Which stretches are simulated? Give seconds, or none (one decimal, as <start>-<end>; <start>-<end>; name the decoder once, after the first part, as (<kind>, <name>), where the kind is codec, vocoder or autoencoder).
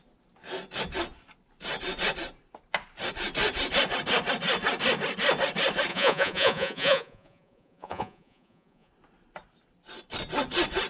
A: 5.9-8.9 (vocoder, Vocos)